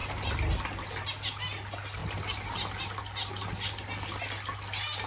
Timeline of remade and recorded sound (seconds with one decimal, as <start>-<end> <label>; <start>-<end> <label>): 0.0-5.1 recorded